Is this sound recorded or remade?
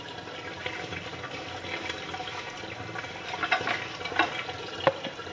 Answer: recorded